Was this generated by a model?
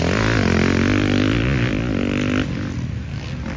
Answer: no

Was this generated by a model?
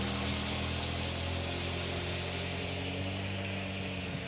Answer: no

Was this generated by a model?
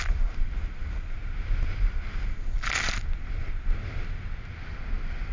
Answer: no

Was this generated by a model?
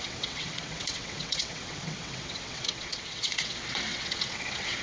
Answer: yes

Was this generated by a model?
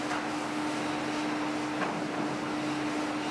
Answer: no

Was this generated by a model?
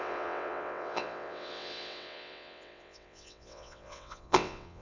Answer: yes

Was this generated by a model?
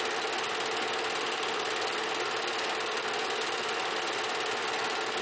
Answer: no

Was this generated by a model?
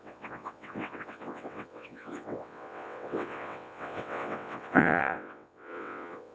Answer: yes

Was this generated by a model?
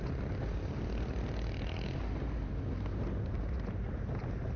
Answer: no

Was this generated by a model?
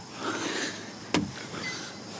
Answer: no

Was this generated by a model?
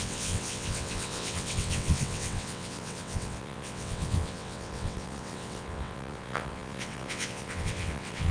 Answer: yes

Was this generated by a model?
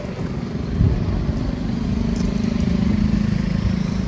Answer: no